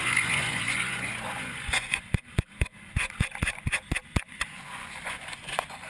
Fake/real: fake